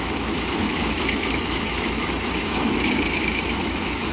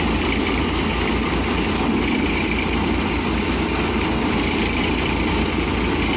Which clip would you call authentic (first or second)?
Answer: second